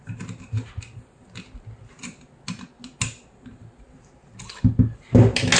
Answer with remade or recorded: recorded